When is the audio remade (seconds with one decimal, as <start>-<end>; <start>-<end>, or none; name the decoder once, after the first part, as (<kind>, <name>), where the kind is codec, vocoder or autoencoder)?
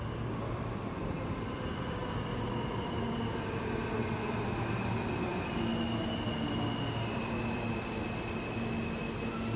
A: none